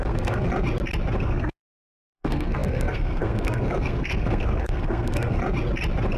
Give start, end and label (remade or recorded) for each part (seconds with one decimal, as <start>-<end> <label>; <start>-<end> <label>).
0.0-0.5 remade; 0.5-1.2 recorded; 1.2-5.4 remade; 5.4-6.2 recorded